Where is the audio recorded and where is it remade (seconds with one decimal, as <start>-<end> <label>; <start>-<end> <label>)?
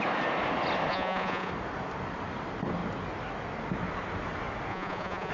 0.0-0.9 recorded; 0.9-1.5 remade; 1.5-4.7 recorded; 4.7-5.3 remade